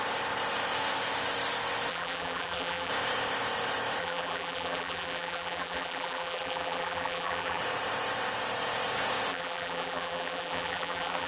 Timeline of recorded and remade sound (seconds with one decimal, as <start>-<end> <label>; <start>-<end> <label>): 0.0-1.9 recorded; 1.9-2.9 remade; 2.9-4.0 recorded; 4.0-7.6 remade; 7.6-9.3 recorded; 9.3-11.3 remade